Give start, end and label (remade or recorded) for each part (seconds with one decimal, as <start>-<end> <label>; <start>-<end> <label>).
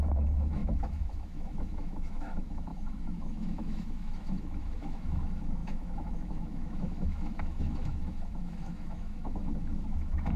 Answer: 0.0-10.4 remade